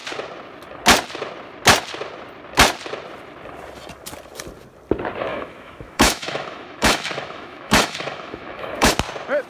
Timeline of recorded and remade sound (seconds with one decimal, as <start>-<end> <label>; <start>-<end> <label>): 0.0-5.3 recorded; 5.3-8.9 remade; 8.9-9.5 recorded